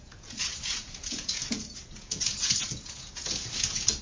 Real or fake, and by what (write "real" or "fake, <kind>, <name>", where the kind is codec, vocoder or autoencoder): fake, vocoder, Vocos